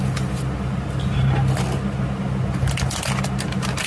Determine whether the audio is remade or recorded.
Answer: recorded